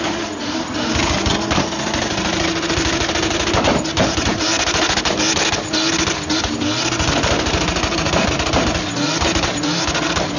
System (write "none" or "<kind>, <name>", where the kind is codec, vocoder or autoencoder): none